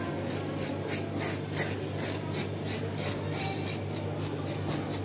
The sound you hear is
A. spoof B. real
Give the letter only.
B